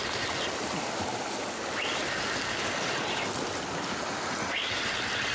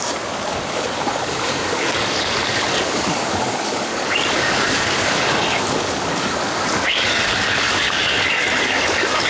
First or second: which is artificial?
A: second